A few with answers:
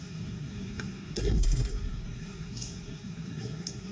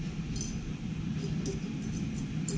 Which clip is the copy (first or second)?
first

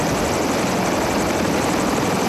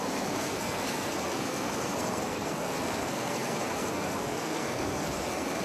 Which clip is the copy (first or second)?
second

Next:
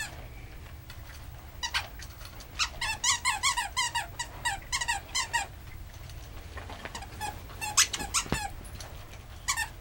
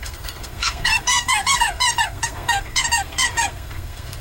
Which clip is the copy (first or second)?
second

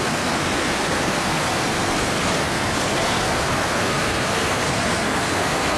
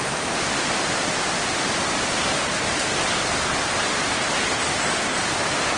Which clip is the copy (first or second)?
first